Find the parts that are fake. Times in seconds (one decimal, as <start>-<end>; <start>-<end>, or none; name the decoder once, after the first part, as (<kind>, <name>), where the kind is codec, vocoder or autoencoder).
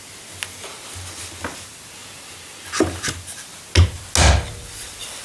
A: none